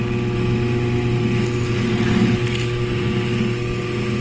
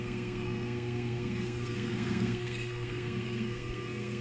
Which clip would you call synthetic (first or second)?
second